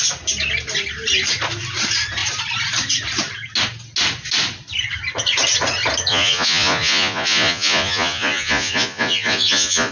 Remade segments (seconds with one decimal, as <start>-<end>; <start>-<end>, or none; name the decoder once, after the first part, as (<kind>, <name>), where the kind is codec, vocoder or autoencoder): 6.1-9.9 (vocoder, Vocos)